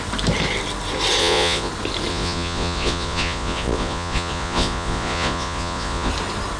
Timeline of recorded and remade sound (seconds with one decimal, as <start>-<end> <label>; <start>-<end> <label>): 0.0-1.2 recorded; 1.2-1.7 remade; 1.7-2.1 recorded; 2.1-6.1 remade; 6.1-6.6 recorded